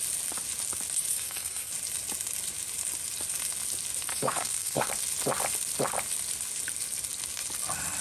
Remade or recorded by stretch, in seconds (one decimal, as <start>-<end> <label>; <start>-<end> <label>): 0.0-1.1 recorded; 1.1-1.7 remade; 1.7-4.1 recorded; 4.1-4.9 remade; 4.9-8.0 recorded